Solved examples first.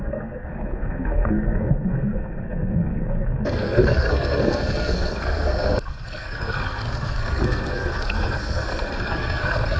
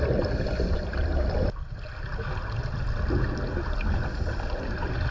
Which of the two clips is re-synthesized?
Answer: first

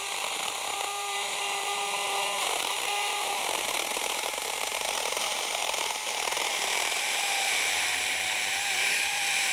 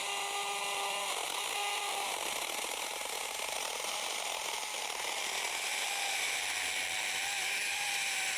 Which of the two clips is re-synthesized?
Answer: first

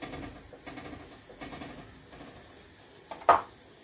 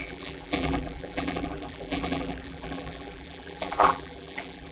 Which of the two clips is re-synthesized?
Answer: second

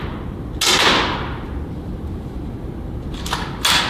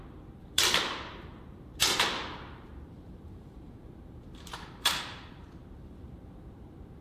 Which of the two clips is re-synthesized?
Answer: second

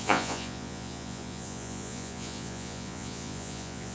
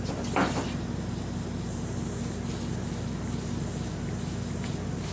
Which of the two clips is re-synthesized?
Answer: first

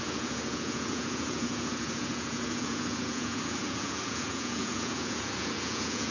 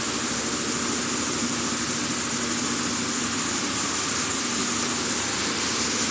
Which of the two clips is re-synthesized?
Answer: first